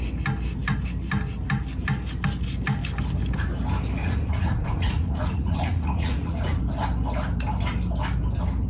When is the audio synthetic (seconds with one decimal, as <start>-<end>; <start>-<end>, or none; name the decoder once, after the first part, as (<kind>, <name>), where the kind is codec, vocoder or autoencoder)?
4.0-6.6 (vocoder, Vocos)